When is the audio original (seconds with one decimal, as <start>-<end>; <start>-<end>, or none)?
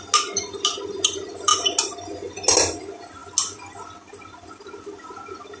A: 0.0-5.6